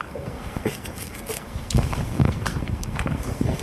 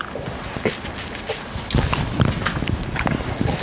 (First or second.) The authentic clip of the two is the second